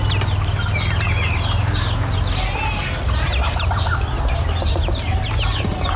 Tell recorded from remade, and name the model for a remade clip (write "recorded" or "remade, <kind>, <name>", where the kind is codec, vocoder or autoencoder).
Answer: recorded